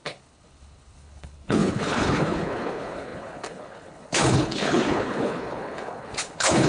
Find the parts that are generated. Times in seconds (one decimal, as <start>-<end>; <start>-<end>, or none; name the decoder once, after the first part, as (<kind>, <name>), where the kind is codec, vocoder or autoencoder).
0.0-6.7 (codec, HILCodec)